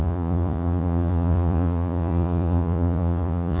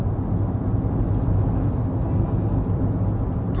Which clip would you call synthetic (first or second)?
first